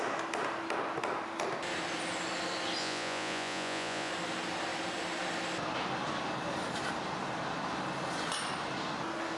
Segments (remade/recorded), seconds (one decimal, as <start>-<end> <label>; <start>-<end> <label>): 0.0-2.8 recorded; 2.8-4.1 remade; 4.1-9.4 recorded